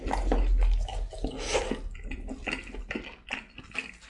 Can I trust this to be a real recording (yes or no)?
yes